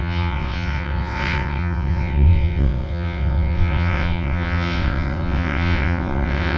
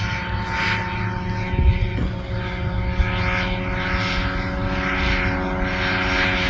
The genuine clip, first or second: second